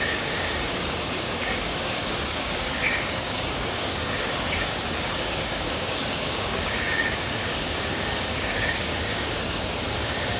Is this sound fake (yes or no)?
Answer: yes